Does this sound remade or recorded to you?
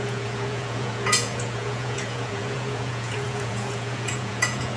remade